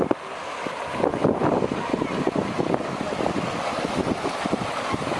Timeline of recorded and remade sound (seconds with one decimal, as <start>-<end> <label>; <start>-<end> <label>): 0.0-5.2 recorded